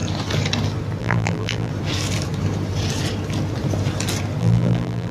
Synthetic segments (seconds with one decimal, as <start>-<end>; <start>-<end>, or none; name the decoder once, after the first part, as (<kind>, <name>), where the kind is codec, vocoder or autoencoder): 1.0-1.7 (vocoder, BigVGAN v2); 4.4-5.1